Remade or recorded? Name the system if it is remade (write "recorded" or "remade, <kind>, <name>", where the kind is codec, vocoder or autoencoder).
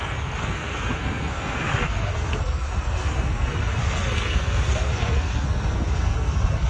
remade, codec, SNAC